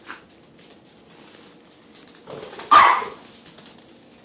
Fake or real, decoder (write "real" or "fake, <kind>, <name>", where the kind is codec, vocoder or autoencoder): real